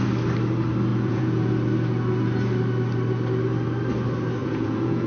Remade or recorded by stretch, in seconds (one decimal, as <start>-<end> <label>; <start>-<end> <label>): 0.0-0.9 recorded; 0.9-1.5 remade; 1.5-4.4 recorded; 4.4-5.1 remade